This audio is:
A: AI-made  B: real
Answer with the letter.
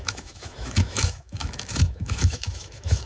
A